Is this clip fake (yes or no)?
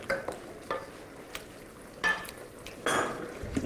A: no